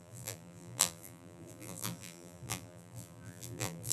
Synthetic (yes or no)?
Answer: yes